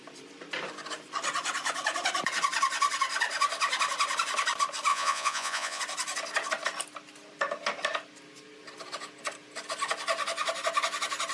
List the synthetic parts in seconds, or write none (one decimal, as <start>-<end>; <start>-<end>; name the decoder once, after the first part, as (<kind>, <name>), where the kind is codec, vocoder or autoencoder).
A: 4.9-5.8 (vocoder, Vocos)